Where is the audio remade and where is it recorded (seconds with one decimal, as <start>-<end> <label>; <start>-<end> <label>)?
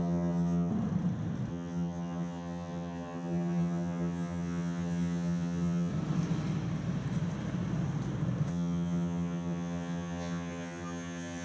0.0-0.7 remade; 0.7-1.5 recorded; 1.5-5.9 remade; 5.9-8.5 recorded; 8.5-11.4 remade